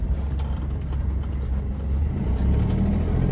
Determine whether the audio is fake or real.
real